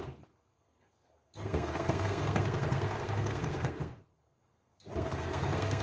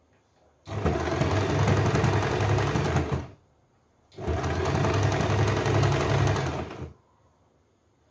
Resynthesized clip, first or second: first